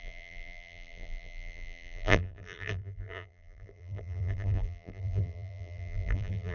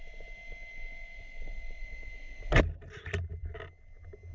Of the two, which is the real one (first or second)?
second